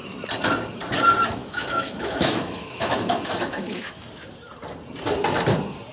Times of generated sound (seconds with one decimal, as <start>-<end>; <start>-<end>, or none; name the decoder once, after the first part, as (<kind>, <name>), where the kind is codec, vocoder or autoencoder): 1.4-4.0 (autoencoder, DAC-VAE)